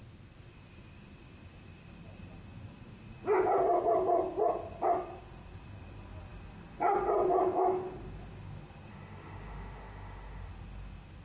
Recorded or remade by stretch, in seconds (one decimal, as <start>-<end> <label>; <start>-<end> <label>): 0.0-8.9 recorded; 8.9-10.5 remade; 10.5-11.2 recorded